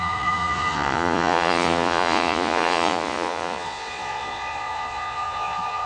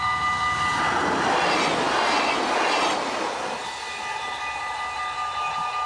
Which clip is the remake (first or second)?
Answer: first